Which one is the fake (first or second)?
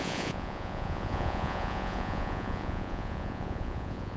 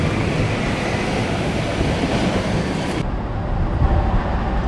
first